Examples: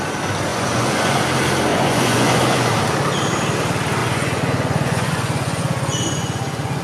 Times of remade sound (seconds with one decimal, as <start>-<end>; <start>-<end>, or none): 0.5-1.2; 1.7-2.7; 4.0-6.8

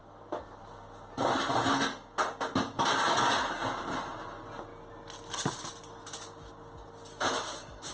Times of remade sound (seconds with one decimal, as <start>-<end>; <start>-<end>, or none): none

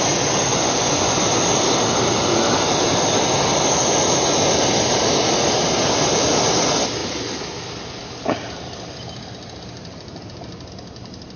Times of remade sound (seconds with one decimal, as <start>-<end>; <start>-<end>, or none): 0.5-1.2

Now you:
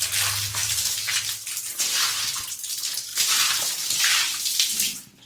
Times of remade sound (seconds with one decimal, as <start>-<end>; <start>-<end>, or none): none

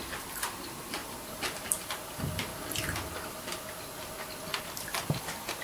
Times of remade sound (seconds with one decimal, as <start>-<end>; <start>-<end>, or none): 0.0-2.5; 4.6-5.6

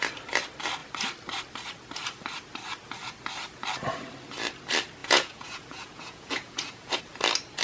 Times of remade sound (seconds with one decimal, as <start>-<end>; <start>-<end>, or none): 5.0-7.0